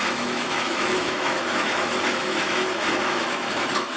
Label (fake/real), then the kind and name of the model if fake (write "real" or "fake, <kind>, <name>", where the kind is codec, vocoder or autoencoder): fake, autoencoder, DAC-VAE